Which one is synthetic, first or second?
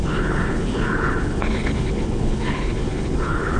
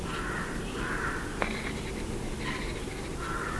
first